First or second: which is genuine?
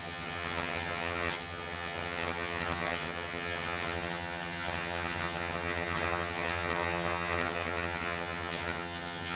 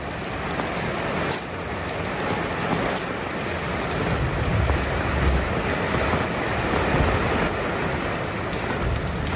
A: second